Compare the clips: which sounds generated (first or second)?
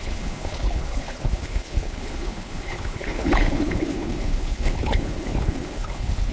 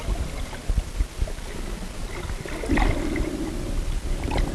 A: first